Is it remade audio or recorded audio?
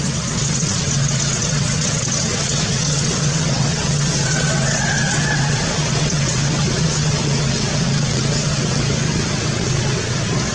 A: remade